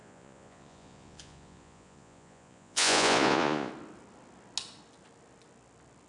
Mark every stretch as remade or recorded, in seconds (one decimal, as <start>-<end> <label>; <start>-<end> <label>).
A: 0.0-3.7 remade; 3.7-6.1 recorded